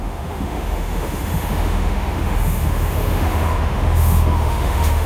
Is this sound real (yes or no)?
no